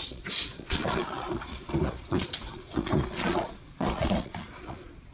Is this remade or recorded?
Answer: remade